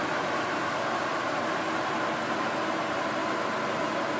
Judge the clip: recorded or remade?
recorded